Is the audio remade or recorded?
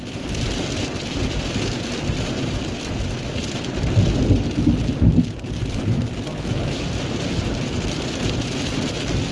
remade